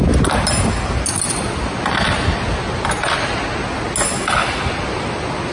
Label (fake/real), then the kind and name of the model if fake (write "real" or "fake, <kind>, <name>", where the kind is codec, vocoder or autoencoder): real